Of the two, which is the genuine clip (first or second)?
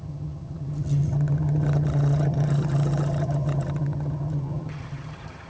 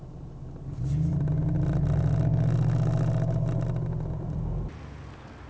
second